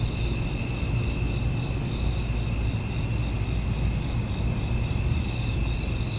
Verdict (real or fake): real